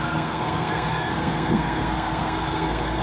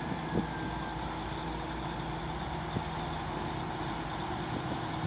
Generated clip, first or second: first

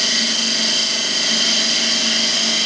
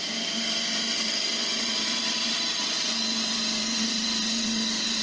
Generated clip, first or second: second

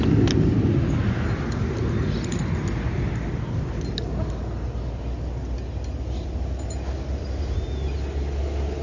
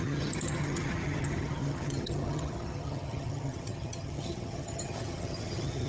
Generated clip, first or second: second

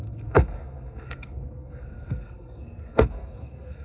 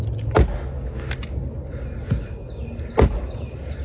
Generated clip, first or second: first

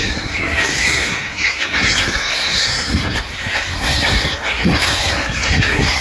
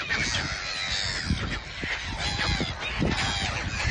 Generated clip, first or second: first